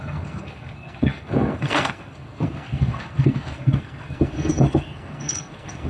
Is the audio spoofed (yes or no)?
yes